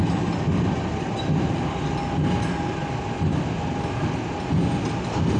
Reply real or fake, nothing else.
real